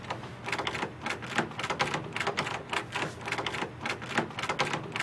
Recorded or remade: recorded